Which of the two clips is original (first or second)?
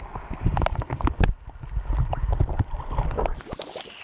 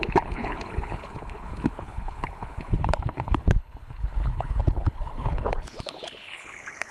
first